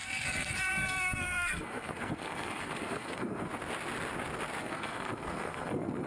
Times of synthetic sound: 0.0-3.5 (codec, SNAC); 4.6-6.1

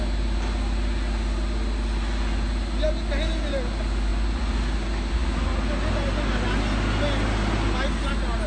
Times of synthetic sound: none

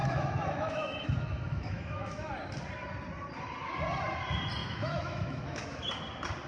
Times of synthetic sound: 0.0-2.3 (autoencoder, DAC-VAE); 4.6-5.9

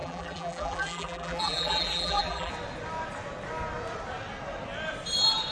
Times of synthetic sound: 0.0-2.5 (vocoder, BigVGAN v2)